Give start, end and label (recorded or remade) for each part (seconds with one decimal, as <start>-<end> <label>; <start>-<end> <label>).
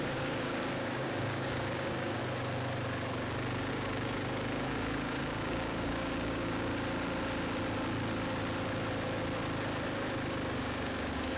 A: 0.0-2.2 remade; 2.2-3.7 recorded; 3.7-6.7 remade; 6.7-10.6 recorded; 10.6-11.4 remade